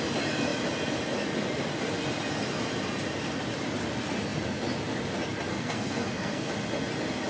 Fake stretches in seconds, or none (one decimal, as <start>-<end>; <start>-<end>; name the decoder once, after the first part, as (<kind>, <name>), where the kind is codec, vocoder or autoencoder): 5.5-6.5 (codec, SNAC)